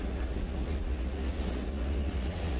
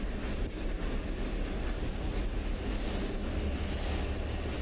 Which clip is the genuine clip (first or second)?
second